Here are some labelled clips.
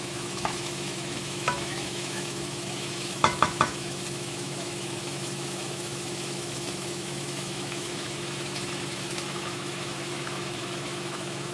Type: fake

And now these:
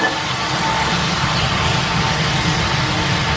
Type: real